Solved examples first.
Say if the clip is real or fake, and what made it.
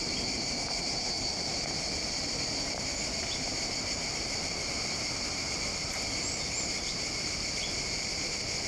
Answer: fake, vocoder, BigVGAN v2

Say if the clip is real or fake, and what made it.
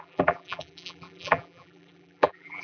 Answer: fake, vocoder, BigVGAN v2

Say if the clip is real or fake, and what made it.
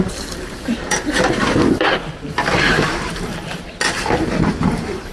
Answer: fake, vocoder, BigVGAN v2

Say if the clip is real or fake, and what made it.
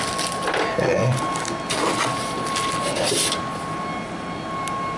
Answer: real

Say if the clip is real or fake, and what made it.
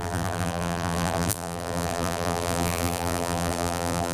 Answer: fake, vocoder, BigVGAN v2